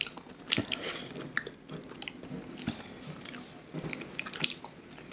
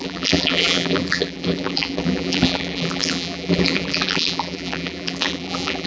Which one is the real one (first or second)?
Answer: first